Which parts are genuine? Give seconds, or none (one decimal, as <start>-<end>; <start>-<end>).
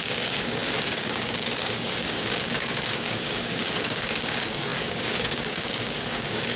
none